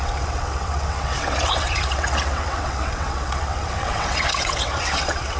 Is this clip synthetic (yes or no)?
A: yes